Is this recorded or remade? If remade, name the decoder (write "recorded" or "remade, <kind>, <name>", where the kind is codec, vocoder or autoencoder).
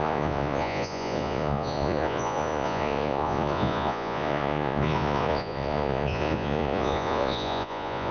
remade, vocoder, Vocos